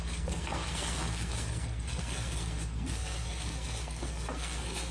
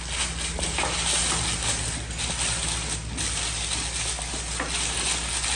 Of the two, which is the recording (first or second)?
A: second